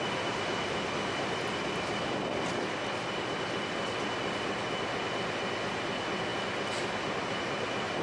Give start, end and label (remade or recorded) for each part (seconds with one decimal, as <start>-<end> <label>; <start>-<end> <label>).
0.0-8.0 recorded